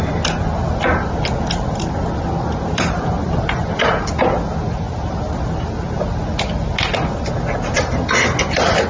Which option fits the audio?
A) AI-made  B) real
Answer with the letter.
B